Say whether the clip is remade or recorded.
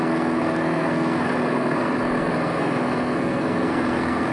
remade